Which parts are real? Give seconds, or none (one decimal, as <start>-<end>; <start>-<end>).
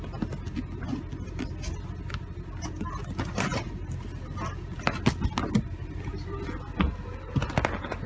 0.0-8.1